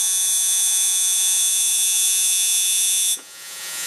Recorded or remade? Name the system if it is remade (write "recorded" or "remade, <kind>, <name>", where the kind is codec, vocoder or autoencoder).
remade, vocoder, Vocos